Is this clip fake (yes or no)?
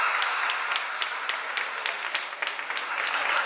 no